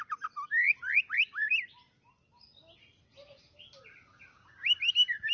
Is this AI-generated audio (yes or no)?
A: no